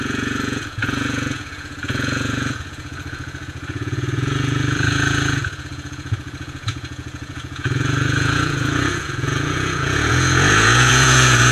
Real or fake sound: fake